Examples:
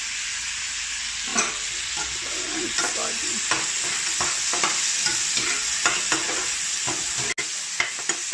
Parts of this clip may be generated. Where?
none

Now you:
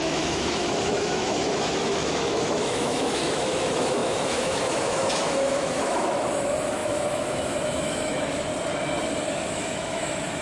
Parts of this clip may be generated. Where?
0.0-8.5 (autoencoder, DAC-VAE); 9.3-10.4

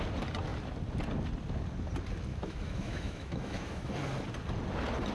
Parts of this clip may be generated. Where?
2.3-3.9 (autoencoder, DAC-VAE)

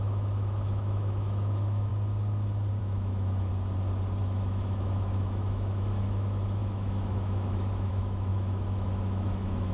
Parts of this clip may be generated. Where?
0.0-1.9 (autoencoder, DAC-VAE); 2.8-3.5; 4.2-9.7

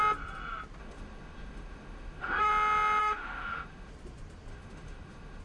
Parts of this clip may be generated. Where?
0.8-2.5 (autoencoder, DAC-VAE); 3.0-3.9; 4.5-5.4

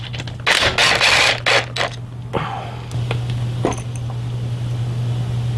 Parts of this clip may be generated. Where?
none

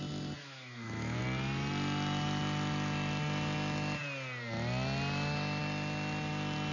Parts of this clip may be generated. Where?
0.4-1.2 (autoencoder, DAC-VAE)